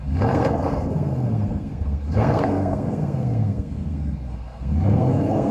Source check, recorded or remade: remade